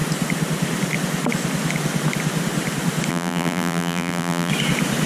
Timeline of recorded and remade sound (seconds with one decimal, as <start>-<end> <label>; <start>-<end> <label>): 0.0-3.1 recorded; 3.1-4.5 remade; 4.5-5.1 recorded